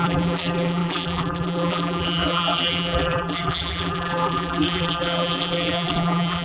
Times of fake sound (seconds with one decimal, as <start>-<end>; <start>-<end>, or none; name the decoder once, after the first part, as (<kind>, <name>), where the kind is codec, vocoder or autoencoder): 0.0-6.4 (vocoder, BigVGAN v2)